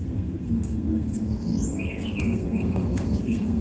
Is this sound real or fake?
fake